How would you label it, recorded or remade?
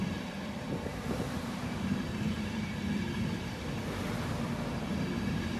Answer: remade